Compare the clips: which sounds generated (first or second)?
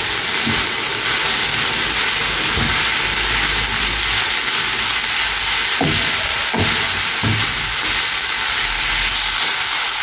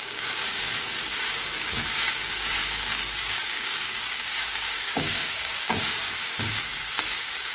second